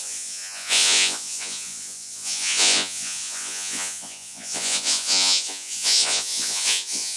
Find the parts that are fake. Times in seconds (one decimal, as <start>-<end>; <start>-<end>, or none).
0.0-7.2